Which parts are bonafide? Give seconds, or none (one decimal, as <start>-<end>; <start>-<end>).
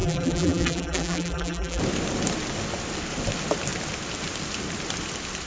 1.8-5.5